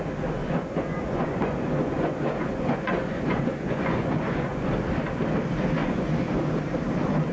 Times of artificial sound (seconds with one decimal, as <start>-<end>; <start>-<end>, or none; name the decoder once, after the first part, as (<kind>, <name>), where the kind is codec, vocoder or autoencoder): 0.4-4.7 (vocoder, Vocos); 5.8-6.5